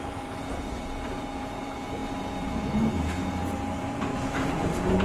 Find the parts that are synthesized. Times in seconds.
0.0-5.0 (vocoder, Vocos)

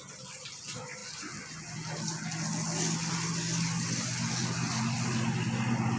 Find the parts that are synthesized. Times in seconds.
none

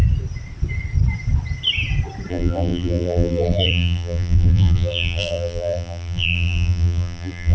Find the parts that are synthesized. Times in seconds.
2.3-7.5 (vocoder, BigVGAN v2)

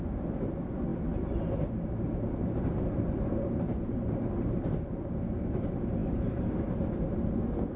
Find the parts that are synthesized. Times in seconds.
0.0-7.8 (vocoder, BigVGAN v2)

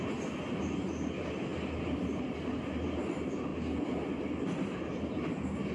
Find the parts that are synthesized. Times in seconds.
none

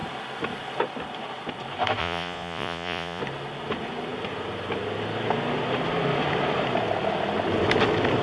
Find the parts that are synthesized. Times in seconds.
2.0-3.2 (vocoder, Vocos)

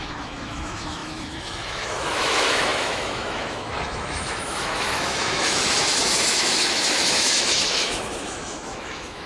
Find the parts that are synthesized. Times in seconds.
0.0-9.3 (autoencoder, DAC-VAE)